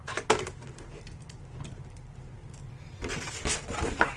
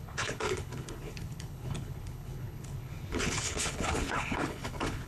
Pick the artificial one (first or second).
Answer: second